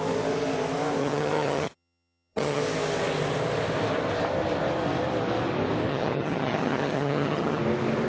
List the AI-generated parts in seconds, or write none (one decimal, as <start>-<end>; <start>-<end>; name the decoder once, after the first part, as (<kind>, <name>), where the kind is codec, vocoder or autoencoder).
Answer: 1.0-2.6 (vocoder, HiFi-GAN); 5.9-7.6